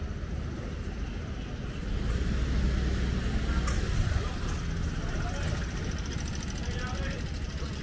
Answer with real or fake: real